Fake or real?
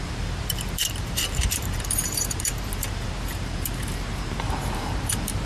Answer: fake